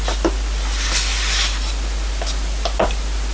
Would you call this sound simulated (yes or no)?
no